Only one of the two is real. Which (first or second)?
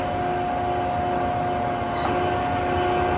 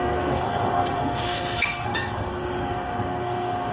first